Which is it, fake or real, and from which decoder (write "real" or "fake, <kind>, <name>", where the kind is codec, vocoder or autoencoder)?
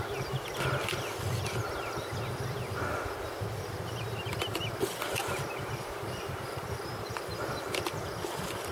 real